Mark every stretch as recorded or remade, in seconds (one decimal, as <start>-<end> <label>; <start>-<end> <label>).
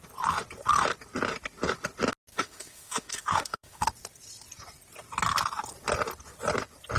0.0-2.3 recorded; 2.3-3.9 remade; 3.9-7.0 recorded